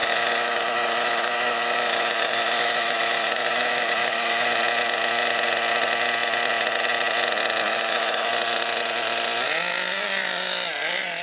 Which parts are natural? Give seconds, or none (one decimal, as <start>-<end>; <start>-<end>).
4.6-7.7; 8.3-11.2